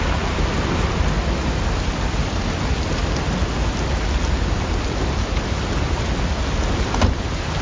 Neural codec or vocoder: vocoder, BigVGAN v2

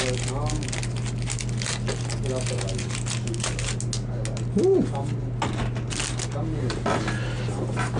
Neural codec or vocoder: none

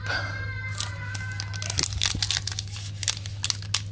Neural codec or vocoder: none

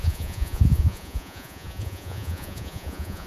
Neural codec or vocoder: vocoder, Vocos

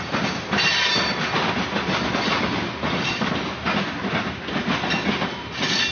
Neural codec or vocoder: none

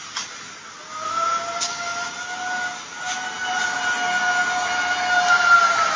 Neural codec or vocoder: none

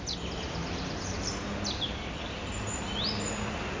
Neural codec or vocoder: none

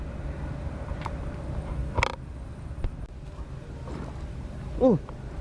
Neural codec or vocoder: none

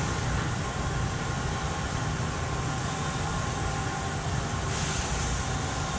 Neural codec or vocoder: none